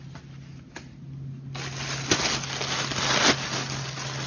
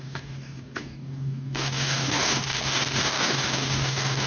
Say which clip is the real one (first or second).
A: first